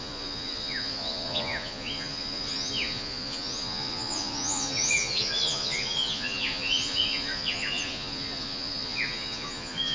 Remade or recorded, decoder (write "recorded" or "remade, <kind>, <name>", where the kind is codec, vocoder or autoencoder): remade, vocoder, Vocos